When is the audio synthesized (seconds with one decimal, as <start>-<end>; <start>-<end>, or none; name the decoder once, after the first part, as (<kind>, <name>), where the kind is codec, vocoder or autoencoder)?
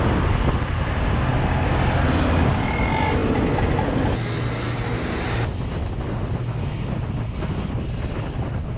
none